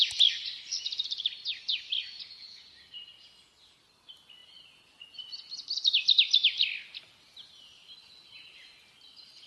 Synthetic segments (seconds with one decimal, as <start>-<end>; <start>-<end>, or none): none